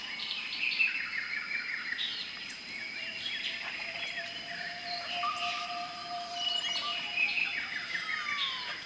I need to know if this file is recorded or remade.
remade